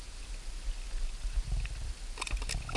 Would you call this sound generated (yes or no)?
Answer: no